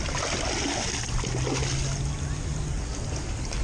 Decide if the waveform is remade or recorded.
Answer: recorded